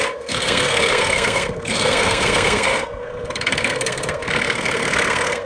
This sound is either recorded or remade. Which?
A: remade